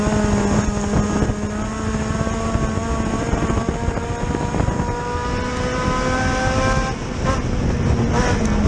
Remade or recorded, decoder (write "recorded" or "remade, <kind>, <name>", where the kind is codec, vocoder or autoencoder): recorded